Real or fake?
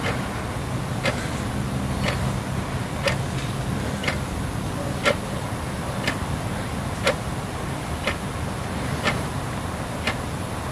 real